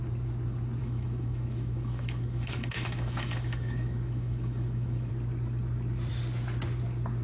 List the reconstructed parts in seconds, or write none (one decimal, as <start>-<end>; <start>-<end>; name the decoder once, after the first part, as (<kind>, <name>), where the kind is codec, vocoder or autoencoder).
0.8-5.1 (autoencoder, DAC-VAE)